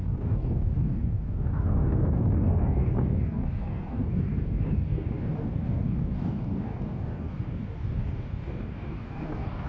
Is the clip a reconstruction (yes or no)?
yes